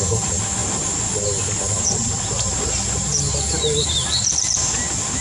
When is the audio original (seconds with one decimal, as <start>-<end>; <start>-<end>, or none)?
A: 0.0-5.2